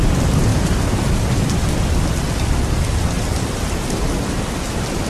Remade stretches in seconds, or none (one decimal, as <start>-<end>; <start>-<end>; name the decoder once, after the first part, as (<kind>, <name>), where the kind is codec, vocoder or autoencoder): none